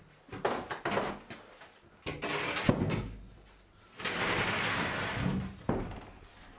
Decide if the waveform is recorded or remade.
recorded